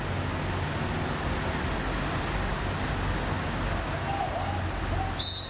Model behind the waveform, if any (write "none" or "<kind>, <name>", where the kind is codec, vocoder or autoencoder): none